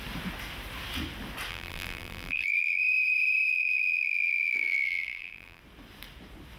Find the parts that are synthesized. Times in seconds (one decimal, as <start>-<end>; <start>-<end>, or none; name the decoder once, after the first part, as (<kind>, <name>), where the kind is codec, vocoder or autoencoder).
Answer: 1.5-2.8 (vocoder, BigVGAN v2); 3.5-5.6